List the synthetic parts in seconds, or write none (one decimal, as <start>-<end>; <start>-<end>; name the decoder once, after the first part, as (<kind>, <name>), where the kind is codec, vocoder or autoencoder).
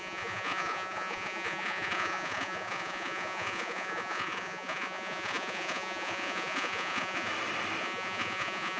0.0-7.3 (vocoder, Vocos); 7.8-8.8